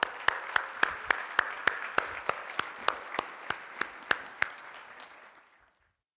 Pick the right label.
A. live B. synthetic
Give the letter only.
A